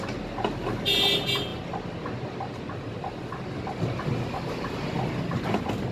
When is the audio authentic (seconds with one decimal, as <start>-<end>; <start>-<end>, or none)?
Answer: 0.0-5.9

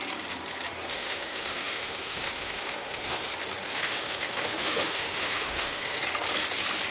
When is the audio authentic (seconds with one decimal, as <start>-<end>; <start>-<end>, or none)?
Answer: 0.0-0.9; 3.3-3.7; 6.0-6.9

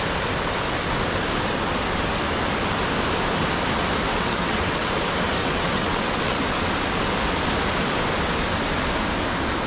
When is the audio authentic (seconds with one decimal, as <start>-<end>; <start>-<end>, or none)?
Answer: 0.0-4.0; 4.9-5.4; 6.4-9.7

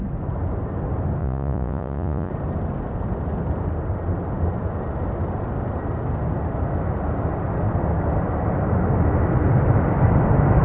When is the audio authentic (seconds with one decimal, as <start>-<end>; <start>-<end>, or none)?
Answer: 0.0-1.2; 2.3-10.6

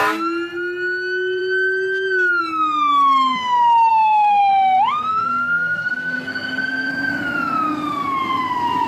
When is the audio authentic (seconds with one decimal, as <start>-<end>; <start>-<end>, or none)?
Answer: 0.0-3.9; 4.5-5.1; 6.9-8.9

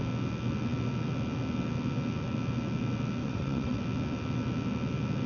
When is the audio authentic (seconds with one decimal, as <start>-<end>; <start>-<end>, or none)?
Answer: 0.0-3.2; 3.8-5.3

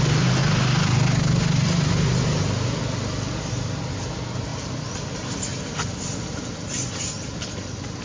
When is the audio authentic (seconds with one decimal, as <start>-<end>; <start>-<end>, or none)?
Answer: 0.0-4.5